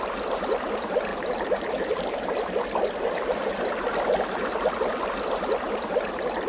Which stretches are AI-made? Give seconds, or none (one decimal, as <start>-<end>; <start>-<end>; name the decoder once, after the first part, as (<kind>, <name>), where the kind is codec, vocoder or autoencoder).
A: 1.1-1.7 (vocoder, BigVGAN v2)